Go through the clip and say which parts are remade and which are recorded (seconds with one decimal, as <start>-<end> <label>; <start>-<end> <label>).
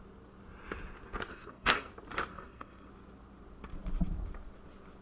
0.0-1.3 recorded; 1.3-1.9 remade; 1.9-2.3 recorded; 2.3-2.9 remade; 2.9-5.0 recorded